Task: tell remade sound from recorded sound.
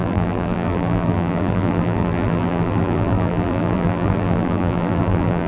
remade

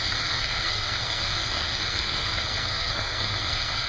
remade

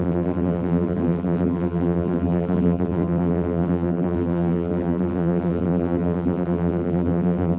remade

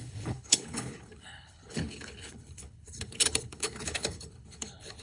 remade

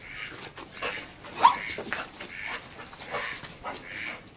recorded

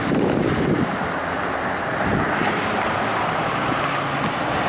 recorded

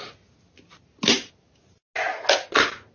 recorded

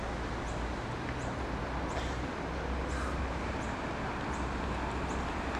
recorded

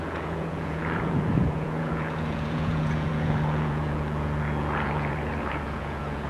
remade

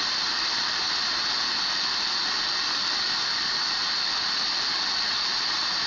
recorded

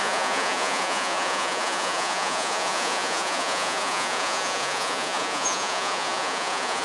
remade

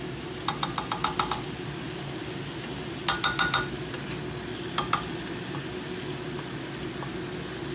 recorded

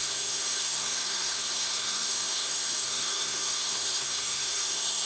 remade